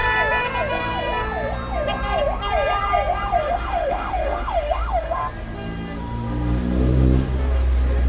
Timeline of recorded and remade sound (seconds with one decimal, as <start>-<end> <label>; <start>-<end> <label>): 0.0-3.4 recorded; 3.4-5.2 remade; 5.2-8.1 recorded